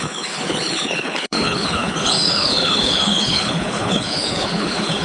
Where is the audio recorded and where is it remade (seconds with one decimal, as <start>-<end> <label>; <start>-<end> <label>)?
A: 0.0-5.0 remade